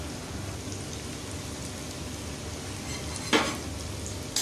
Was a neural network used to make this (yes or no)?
no